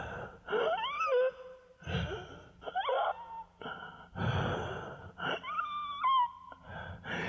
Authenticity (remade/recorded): recorded